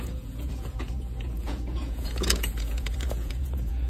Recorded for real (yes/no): no